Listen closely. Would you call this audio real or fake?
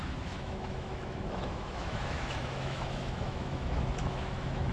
fake